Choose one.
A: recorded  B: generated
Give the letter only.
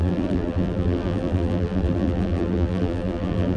B